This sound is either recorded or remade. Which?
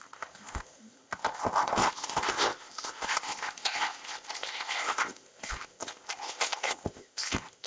remade